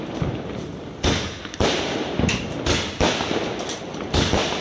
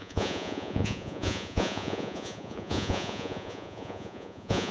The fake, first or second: second